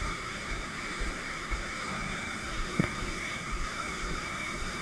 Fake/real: fake